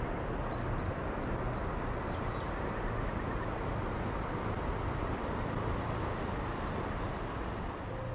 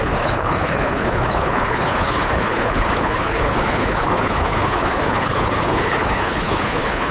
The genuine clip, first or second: first